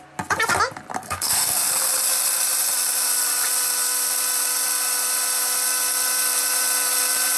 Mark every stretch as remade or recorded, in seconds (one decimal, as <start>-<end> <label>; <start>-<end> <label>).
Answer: 0.0-1.0 recorded; 1.0-1.7 remade; 1.7-7.4 recorded